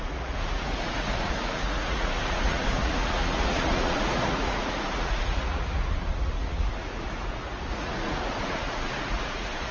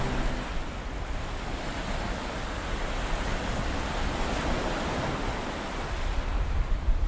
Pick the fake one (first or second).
first